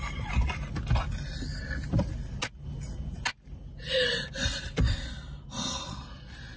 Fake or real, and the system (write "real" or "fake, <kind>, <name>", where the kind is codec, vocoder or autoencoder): real